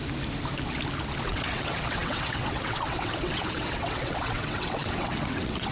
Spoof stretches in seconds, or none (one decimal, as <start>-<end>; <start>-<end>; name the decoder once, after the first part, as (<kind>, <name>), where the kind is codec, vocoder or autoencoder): 1.2-5.7 (vocoder, WaveNeXt)